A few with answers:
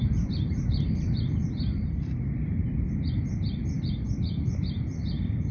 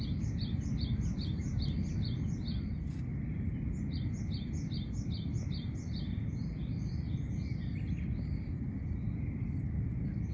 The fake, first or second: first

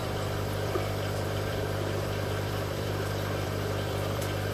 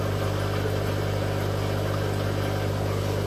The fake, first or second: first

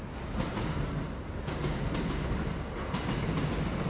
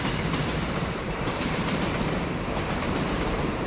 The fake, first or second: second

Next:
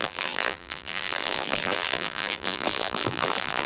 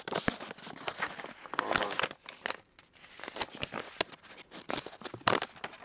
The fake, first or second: first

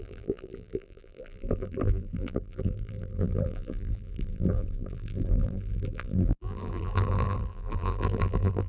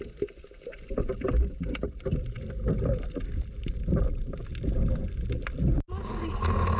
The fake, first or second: first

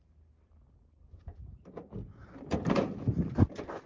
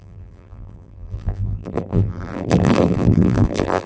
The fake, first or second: second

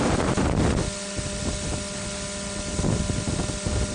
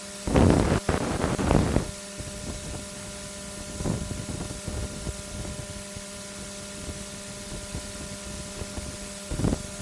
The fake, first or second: second